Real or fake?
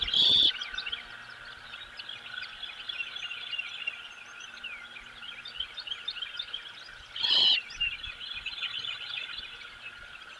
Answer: real